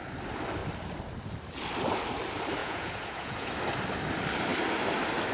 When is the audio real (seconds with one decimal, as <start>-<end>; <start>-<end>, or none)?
0.0-2.6; 3.5-5.3